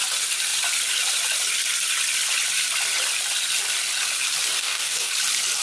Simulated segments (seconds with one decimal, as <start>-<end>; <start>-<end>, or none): 4.6-5.1